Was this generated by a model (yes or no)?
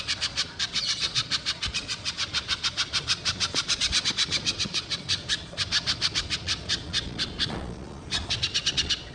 yes